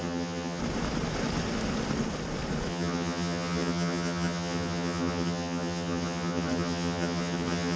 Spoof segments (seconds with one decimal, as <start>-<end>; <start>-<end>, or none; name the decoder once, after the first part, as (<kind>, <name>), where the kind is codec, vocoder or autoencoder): 0.0-0.6 (vocoder, HiFi-GAN); 2.7-7.8